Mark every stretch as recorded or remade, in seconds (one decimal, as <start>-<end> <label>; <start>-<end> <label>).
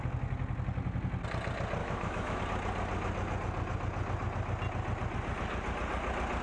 0.0-1.8 recorded; 1.8-2.4 remade; 2.4-6.4 recorded